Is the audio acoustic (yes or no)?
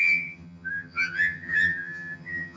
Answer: no